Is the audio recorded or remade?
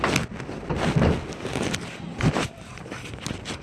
recorded